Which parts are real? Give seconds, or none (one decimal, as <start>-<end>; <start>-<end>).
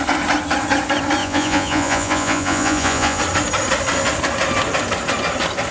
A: 0.0-1.2; 3.2-5.7